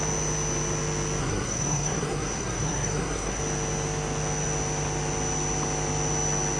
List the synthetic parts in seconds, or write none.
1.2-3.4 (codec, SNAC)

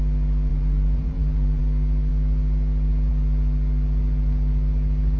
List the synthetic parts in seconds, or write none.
0.5-1.6 (vocoder, BigVGAN v2)

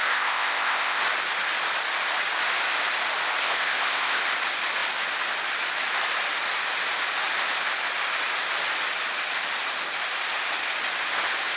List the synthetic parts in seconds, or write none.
0.0-1.0 (codec, ZipCodec); 3.4-4.2

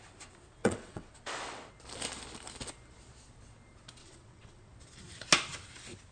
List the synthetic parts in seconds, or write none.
0.6-1.1 (vocoder, WaveNeXt); 4.0-4.7